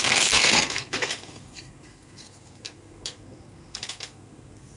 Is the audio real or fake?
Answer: fake